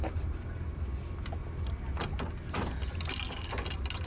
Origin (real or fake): real